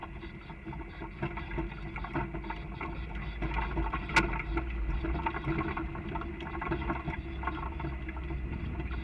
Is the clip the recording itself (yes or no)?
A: yes